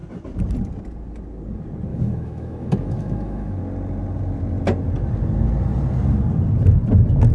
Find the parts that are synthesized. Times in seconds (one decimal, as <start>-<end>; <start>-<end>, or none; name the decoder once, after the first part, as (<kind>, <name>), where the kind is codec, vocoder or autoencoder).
1.9-3.6 (autoencoder, DAC-VAE)